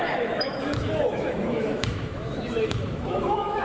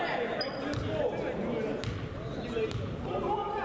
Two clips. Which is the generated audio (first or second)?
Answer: first